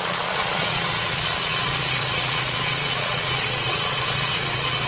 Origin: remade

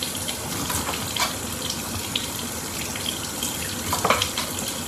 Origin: recorded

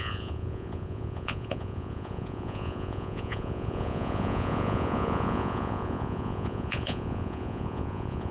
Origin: remade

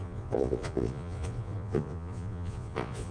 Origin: remade